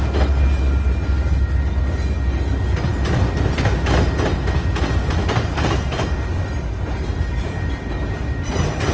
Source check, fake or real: real